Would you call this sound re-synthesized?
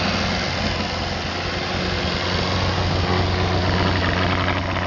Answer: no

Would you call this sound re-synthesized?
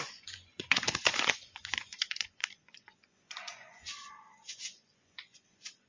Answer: yes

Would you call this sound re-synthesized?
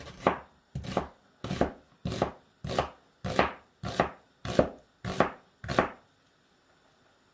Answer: no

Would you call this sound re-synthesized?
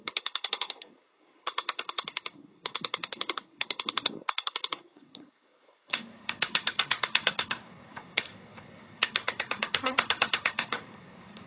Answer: yes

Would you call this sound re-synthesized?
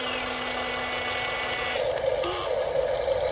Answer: no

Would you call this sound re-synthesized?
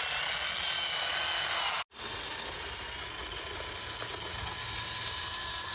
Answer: no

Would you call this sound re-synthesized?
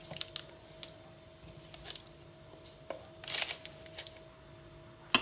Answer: no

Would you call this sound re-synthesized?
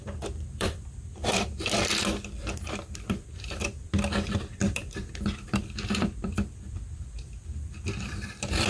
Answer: yes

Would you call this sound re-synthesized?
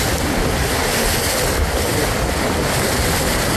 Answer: no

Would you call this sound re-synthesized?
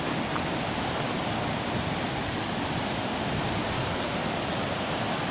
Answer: no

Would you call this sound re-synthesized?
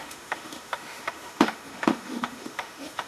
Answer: yes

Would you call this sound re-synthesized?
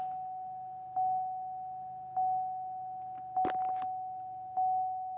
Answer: no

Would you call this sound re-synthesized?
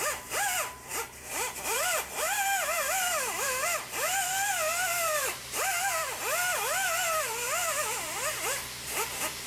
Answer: yes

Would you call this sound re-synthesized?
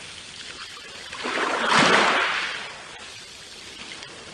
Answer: no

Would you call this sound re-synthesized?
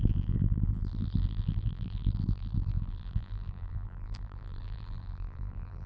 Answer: yes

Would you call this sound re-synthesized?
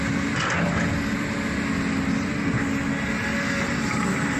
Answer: no